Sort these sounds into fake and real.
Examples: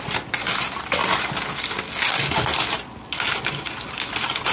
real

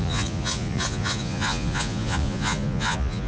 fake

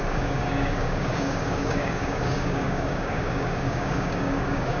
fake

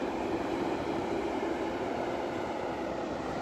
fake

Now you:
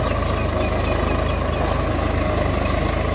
real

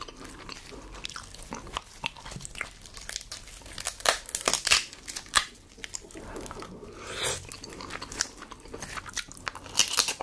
real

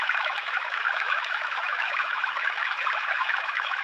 fake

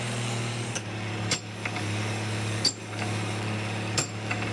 fake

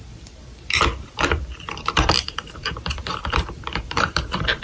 fake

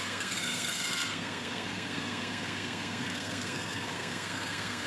fake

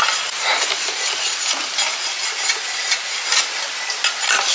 real